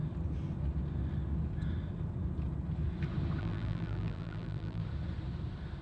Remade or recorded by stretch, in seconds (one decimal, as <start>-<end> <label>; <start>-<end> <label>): 0.0-3.4 recorded; 3.4-4.8 remade; 4.8-5.8 recorded